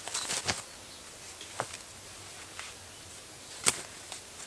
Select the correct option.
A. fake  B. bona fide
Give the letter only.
B